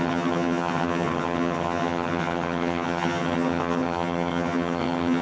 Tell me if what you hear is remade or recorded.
remade